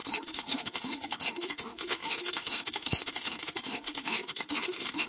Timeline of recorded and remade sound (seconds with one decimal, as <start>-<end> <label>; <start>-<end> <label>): 0.0-5.1 remade